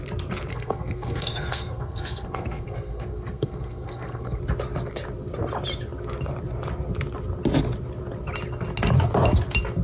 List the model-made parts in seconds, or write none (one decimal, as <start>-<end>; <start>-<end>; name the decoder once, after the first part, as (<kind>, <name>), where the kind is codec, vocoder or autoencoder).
0.5-4.4 (codec, SNAC)